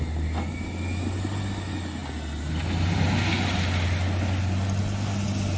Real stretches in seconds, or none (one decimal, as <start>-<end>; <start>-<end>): 0.0-5.6